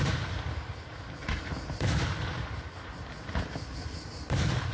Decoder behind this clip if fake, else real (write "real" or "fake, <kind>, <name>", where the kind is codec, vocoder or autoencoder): real